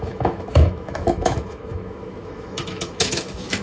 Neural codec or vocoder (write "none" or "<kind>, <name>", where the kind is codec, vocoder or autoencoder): autoencoder, DAC-VAE